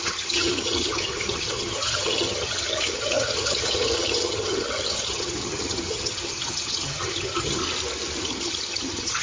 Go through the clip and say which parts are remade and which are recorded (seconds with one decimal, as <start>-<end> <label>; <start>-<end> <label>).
0.0-7.6 remade; 7.6-8.2 recorded; 8.2-9.2 remade